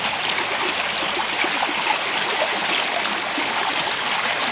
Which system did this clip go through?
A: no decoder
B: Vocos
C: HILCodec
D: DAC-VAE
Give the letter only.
A